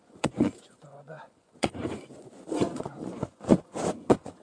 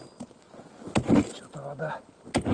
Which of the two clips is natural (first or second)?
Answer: second